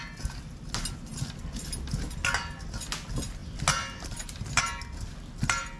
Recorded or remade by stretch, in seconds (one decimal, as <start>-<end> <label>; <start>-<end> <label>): 0.0-5.8 recorded